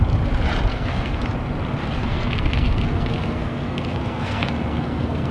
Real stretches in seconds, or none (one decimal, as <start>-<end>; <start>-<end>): 0.0-0.7; 1.2-1.8